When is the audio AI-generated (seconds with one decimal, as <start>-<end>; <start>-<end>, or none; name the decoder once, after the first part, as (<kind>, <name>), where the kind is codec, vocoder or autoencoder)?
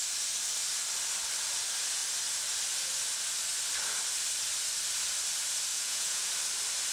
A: 5.7-6.3 (vocoder, Vocos)